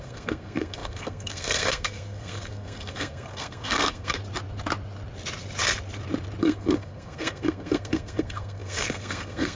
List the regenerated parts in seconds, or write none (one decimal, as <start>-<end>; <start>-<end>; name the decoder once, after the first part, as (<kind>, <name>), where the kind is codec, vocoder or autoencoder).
0.0-4.2 (codec, SNAC); 6.4-9.6